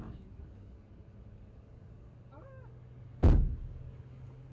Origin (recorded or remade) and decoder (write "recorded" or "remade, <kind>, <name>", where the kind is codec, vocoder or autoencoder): remade, codec, DAC